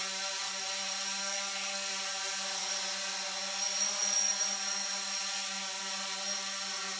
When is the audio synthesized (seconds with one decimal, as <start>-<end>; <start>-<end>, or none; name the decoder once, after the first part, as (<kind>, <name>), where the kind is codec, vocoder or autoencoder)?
1.2-1.9 (codec, SNAC)